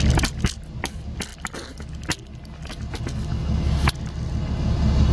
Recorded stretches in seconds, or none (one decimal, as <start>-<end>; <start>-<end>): 0.0-5.1